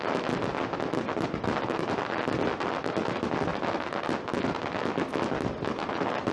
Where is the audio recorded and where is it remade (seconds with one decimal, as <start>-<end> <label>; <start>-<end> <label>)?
0.0-6.3 recorded